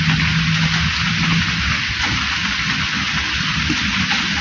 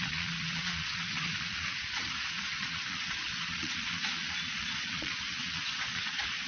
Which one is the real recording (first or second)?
first